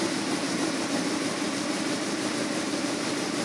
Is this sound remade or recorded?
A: remade